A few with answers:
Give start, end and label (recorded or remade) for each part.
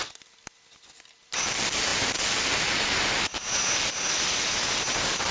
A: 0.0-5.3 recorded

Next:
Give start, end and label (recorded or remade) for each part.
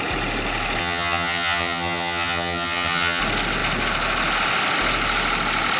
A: 0.0-0.8 recorded; 0.8-3.2 remade; 3.2-5.8 recorded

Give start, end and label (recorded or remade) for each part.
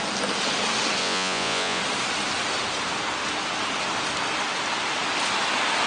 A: 0.0-1.0 recorded; 1.0-1.8 remade; 1.8-5.9 recorded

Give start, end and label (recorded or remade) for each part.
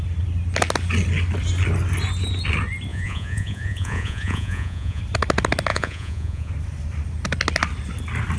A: 0.0-2.9 recorded; 2.9-5.0 remade; 5.0-5.7 recorded; 5.7-6.5 remade; 6.5-8.4 recorded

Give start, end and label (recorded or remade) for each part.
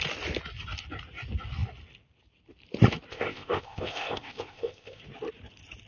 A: 0.0-3.1 recorded; 3.1-5.0 remade; 5.0-5.9 recorded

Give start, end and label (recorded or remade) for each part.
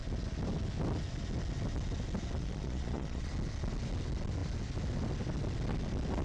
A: 0.0-2.4 recorded; 2.4-3.3 remade; 3.3-6.2 recorded